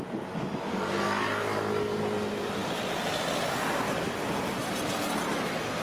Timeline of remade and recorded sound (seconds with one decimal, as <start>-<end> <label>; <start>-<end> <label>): 0.0-5.8 recorded